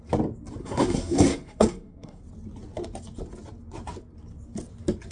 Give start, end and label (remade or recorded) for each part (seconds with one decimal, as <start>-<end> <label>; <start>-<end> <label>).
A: 0.0-0.6 recorded; 0.6-2.2 remade; 2.2-5.1 recorded